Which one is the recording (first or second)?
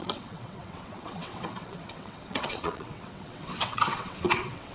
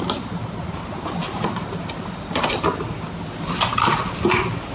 second